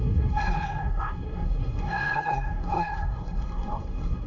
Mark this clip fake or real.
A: fake